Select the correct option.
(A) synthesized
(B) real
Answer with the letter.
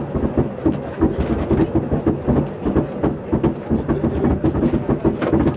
B